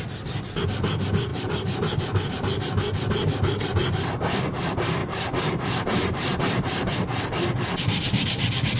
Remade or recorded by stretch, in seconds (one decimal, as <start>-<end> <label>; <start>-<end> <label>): 0.0-1.3 recorded; 1.3-2.3 remade; 2.3-5.0 recorded; 5.0-6.9 remade; 6.9-8.8 recorded